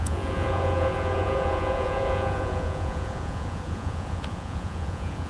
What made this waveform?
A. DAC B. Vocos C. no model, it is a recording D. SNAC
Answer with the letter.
B